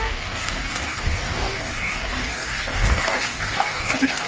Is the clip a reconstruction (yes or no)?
yes